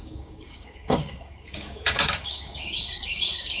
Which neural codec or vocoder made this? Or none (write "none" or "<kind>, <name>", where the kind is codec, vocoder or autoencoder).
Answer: codec, DAC